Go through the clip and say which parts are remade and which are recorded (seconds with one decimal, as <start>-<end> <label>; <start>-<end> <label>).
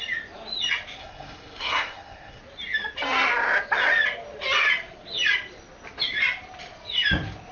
0.0-1.0 recorded; 1.0-2.4 remade; 2.4-7.5 recorded